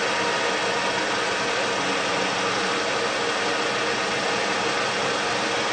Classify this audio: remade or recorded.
recorded